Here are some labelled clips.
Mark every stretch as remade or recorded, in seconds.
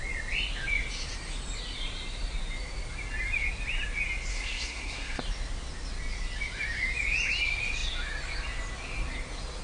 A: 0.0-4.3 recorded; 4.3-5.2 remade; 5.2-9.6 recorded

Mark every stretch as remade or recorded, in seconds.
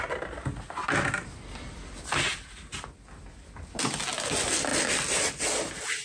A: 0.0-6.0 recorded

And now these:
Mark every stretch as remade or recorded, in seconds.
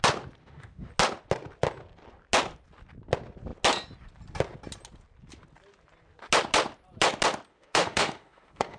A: 0.0-0.4 recorded; 0.4-0.9 remade; 0.9-7.5 recorded; 7.5-8.8 remade